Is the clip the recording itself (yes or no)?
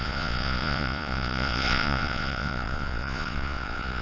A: no